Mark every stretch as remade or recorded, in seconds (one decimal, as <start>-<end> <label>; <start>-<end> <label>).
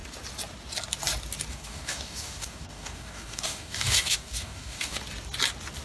0.0-1.5 recorded; 1.5-5.0 remade; 5.0-5.8 recorded